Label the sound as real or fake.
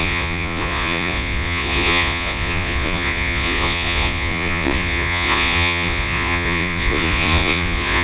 fake